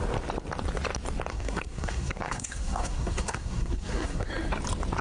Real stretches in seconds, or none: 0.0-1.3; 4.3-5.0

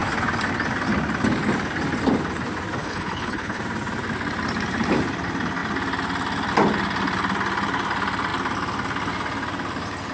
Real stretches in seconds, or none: 0.0-2.8; 3.6-10.1

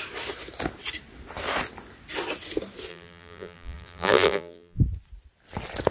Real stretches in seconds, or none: 0.0-2.9; 4.8-5.9

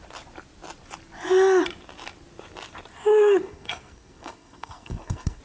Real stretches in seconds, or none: 0.0-3.1

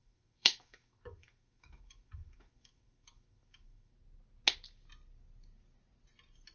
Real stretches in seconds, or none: 3.9-6.5